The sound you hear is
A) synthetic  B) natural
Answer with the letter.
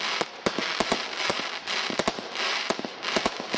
B